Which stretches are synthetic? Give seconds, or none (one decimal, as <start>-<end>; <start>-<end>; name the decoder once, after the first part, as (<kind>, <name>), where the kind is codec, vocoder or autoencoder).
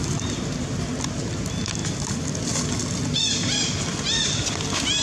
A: none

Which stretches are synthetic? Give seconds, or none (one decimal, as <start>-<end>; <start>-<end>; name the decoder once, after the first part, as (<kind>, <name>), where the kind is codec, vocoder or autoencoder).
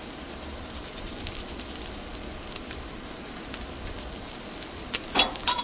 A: 0.0-2.2 (vocoder, BigVGAN v2); 3.9-5.6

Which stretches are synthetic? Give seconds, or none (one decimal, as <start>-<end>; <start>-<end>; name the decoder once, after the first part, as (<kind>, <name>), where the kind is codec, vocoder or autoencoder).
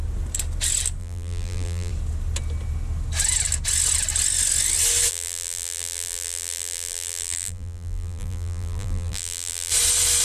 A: 1.0-1.9 (vocoder, BigVGAN v2); 5.1-9.7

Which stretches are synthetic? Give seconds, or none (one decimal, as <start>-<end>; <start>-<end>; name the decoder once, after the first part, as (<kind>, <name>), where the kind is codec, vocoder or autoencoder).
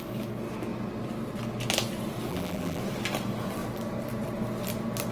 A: 2.3-2.8 (vocoder, BigVGAN v2)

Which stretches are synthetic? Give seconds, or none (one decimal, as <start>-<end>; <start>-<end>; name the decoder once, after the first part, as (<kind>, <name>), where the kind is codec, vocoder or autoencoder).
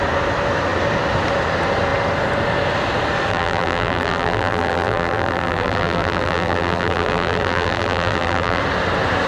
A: 3.3-8.6 (vocoder, BigVGAN v2)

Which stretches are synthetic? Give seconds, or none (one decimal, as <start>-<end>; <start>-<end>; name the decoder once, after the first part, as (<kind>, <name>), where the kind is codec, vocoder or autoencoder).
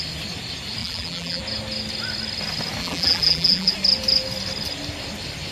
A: 0.8-1.4 (vocoder, BigVGAN v2); 2.8-3.7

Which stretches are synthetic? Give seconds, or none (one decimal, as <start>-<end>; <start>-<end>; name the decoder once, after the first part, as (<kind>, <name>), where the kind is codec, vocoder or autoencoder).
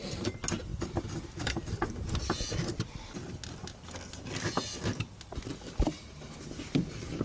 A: 0.7-1.9 (vocoder, BigVGAN v2)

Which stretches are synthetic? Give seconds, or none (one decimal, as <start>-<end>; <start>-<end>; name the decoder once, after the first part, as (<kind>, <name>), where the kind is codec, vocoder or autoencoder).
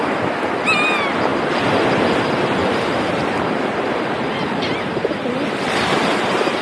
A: 2.6-4.8 (vocoder, BigVGAN v2)